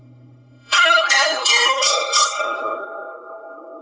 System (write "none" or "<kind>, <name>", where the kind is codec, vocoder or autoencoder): codec, SNAC